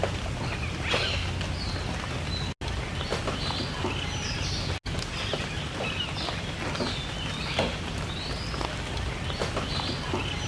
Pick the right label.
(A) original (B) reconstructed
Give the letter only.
A